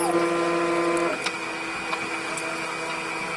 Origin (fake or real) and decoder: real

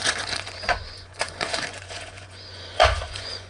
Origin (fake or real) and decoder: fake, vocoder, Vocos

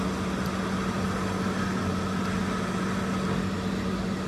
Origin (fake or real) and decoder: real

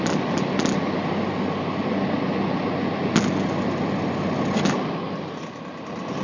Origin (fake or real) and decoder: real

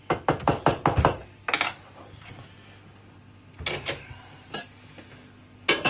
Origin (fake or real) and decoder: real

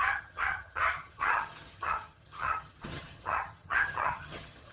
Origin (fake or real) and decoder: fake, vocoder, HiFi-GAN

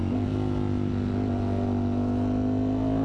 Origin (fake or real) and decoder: real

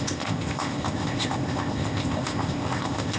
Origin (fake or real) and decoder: fake, codec, ZipCodec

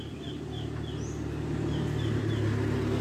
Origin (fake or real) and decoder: real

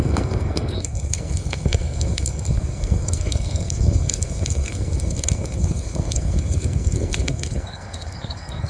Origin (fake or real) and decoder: fake, codec, SNAC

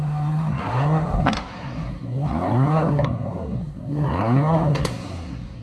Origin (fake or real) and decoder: fake, codec, SNAC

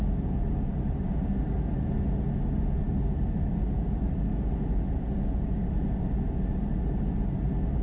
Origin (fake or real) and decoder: real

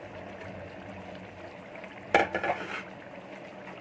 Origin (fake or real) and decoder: real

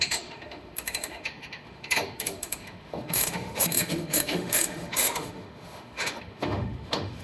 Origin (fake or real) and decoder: fake, autoencoder, DAC-VAE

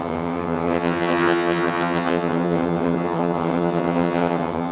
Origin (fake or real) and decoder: fake, vocoder, HiFi-GAN